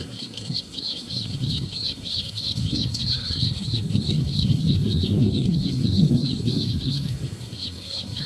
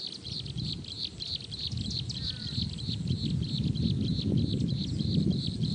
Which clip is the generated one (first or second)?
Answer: first